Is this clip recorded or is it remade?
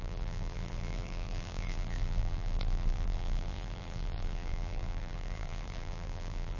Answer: remade